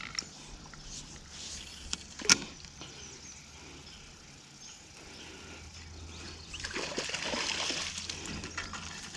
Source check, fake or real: real